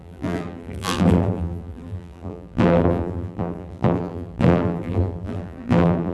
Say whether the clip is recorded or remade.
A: remade